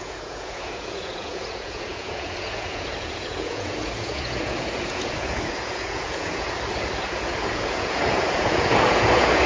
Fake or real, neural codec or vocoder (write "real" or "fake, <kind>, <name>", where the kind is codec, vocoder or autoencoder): fake, vocoder, Vocos